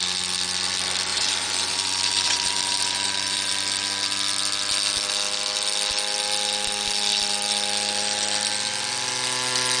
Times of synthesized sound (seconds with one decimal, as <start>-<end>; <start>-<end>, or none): 1.1-3.5